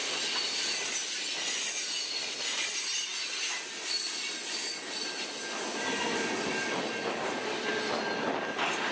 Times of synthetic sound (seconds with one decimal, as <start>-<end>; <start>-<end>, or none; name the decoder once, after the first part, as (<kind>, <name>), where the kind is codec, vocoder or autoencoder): none